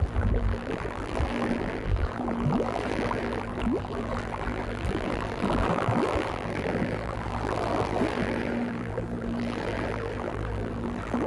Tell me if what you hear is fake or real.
fake